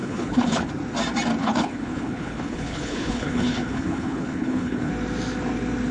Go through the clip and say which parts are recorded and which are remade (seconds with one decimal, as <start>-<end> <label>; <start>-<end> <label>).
0.0-0.7 remade; 0.7-1.4 recorded; 1.4-4.9 remade; 4.9-5.9 recorded